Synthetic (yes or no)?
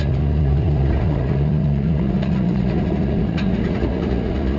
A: yes